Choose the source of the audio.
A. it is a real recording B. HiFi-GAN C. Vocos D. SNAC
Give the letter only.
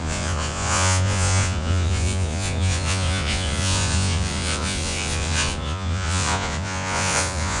C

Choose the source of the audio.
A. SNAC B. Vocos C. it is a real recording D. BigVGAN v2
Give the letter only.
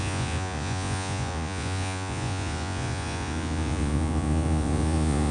B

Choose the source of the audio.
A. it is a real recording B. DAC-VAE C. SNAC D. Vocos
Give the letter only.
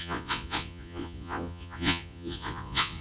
D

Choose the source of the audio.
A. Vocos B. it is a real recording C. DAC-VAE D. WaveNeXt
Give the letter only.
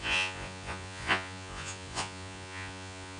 A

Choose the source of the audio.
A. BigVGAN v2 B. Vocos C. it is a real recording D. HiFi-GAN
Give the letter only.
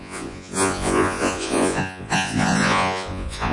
B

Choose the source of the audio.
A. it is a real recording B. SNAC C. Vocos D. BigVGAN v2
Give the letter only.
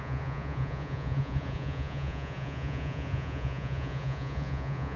C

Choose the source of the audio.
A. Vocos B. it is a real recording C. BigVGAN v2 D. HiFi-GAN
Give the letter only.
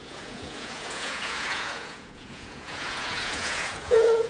A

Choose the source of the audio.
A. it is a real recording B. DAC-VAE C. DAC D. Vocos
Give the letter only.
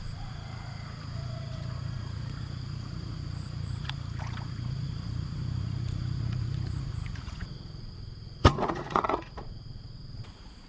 D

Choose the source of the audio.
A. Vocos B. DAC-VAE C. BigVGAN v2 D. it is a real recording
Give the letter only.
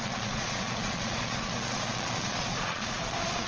A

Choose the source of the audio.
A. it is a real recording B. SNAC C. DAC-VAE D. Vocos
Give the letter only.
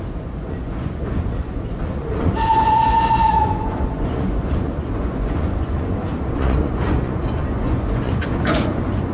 D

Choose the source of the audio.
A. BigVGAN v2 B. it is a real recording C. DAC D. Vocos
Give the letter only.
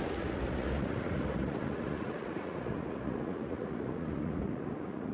D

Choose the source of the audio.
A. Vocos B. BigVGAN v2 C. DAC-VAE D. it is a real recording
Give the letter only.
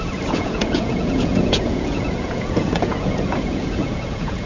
A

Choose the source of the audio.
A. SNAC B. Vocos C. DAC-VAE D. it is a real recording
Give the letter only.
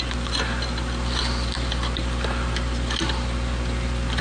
D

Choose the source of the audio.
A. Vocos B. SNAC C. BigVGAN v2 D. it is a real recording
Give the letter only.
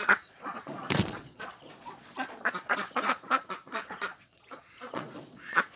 A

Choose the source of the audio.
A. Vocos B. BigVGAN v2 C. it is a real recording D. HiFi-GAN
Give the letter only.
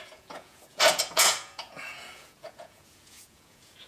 A